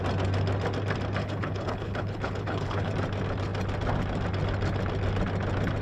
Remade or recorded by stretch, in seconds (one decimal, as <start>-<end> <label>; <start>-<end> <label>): 0.0-1.2 recorded; 1.2-2.9 remade; 2.9-5.8 recorded